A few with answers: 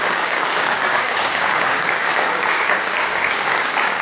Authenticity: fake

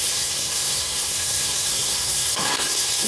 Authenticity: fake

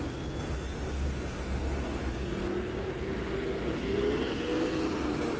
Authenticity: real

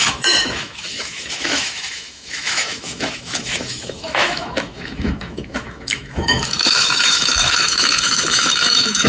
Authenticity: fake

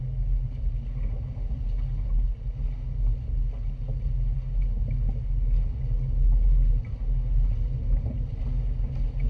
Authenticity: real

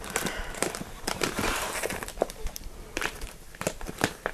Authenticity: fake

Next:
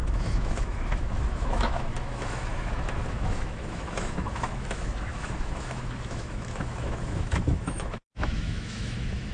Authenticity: fake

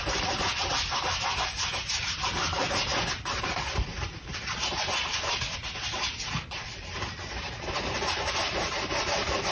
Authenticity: fake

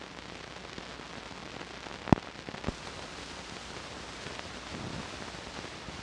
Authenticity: real